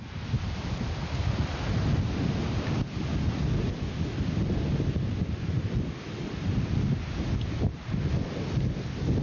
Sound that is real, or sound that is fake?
real